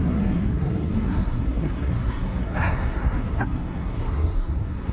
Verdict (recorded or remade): remade